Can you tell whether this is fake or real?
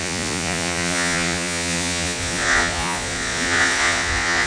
fake